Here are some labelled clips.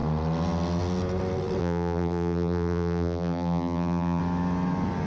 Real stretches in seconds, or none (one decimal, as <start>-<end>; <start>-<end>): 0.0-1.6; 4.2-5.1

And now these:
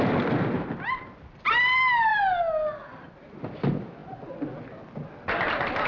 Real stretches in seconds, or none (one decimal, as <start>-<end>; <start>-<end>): 0.0-5.9

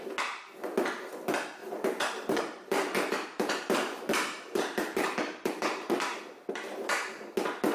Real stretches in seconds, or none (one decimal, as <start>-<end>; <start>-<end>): 0.0-1.6; 6.2-7.7